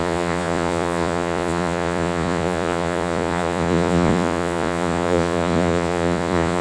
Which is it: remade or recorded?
remade